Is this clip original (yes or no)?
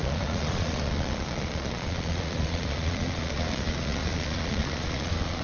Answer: no